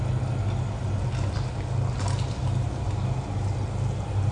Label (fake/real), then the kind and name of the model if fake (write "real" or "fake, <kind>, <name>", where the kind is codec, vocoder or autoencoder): real